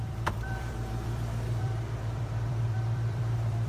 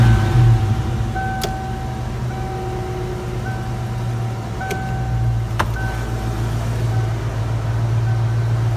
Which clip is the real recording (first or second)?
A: second